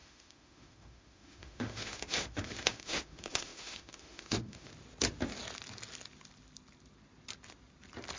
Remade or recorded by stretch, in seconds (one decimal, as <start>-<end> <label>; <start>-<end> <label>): 0.0-4.7 remade; 4.7-8.2 recorded